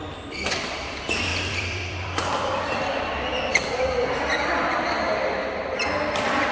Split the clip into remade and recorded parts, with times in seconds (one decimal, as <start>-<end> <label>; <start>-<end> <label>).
0.0-1.3 recorded; 1.3-2.8 remade; 2.8-6.5 recorded